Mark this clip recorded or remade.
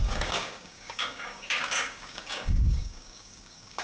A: remade